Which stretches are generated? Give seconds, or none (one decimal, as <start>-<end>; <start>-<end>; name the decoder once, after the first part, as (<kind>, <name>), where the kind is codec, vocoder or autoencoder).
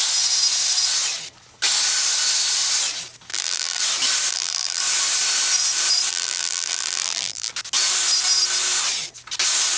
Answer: 3.3-3.8 (vocoder, BigVGAN v2); 4.3-4.8; 6.1-7.5